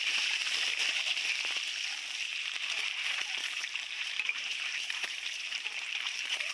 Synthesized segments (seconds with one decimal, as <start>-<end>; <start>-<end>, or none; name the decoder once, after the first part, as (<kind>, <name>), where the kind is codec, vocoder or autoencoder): 2.3-6.5 (vocoder, BigVGAN v2)